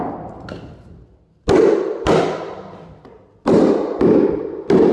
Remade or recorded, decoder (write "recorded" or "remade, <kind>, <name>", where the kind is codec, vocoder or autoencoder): recorded